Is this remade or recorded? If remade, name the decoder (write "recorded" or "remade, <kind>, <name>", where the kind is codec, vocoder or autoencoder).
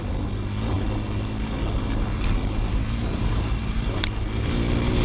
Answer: recorded